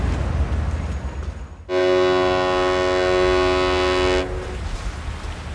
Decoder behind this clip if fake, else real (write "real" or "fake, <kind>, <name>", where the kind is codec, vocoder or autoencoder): real